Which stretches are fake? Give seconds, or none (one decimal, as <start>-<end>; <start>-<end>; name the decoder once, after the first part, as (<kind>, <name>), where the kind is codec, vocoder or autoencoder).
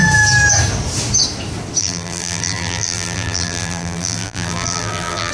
1.8-5.3 (vocoder, BigVGAN v2)